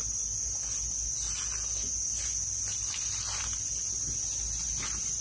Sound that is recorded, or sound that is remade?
recorded